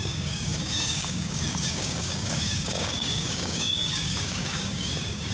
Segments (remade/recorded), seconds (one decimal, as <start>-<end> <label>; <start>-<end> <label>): 0.0-5.3 remade